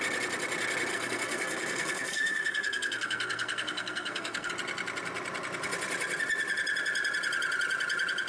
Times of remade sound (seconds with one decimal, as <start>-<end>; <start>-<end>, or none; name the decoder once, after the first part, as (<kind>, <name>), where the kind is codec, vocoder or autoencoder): 0.9-4.5 (codec, SNAC)

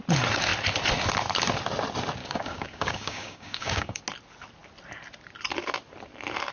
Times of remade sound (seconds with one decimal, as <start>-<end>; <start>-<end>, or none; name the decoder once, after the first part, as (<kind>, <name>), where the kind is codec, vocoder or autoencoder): 2.2-4.0 (codec, DAC)

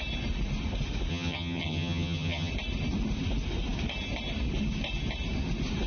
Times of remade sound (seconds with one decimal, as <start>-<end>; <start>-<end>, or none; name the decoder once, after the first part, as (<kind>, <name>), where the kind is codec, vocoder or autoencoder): 1.1-2.5 (vocoder, HiFi-GAN)

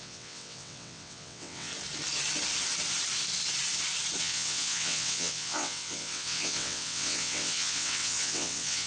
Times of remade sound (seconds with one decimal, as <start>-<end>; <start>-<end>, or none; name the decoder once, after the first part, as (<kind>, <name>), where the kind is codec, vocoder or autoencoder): 0.0-1.7 (vocoder, WaveNeXt); 4.2-8.9

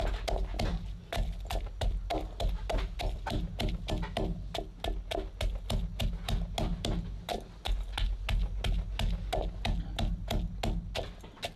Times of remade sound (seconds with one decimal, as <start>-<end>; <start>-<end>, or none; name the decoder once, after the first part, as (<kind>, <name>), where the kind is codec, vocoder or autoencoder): 0.7-3.9 (vocoder, BigVGAN v2)

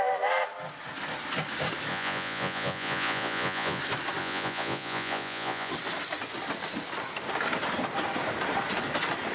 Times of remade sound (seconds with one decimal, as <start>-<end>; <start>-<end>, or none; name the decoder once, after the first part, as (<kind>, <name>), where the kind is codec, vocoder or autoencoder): 1.9-3.8 (vocoder, Vocos); 4.2-5.7